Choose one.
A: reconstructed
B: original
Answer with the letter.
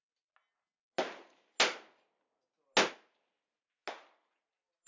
B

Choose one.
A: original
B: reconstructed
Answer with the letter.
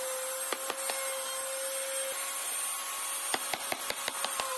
A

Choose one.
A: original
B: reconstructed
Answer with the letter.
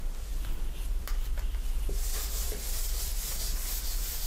B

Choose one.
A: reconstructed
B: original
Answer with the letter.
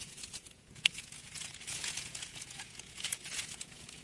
A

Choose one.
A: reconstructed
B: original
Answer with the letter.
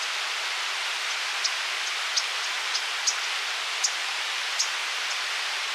B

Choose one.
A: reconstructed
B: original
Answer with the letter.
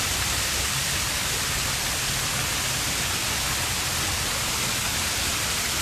B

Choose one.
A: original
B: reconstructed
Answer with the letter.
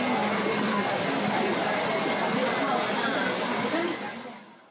A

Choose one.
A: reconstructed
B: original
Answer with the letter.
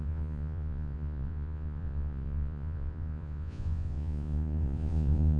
A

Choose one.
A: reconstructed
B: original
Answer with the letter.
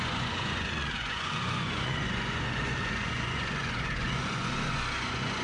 A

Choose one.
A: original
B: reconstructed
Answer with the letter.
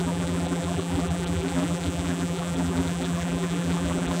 B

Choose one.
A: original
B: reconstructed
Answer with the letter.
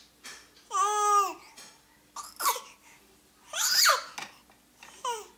A